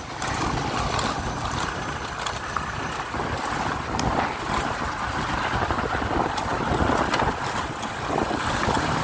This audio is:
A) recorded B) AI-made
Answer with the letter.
A